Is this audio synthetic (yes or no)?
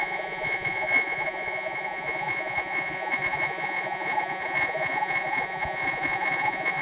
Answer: yes